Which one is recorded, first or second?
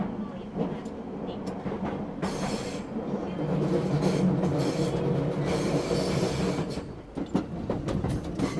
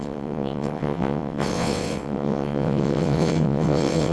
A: first